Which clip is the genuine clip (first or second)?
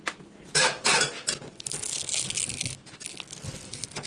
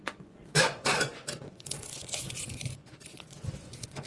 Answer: first